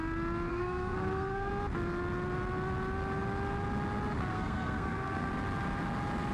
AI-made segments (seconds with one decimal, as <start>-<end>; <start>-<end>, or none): 0.5-1.5; 4.3-5.3